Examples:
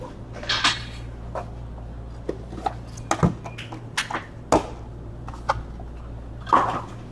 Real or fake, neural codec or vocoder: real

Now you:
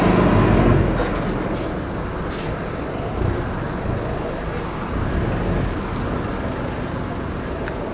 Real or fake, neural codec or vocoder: real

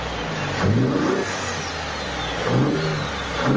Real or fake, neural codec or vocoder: real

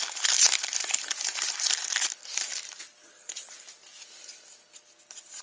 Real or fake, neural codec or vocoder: real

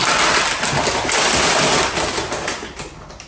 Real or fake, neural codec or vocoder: real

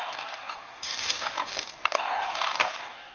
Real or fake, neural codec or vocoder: fake, codec, DAC